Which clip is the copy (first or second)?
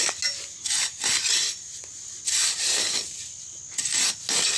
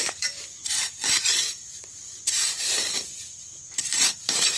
second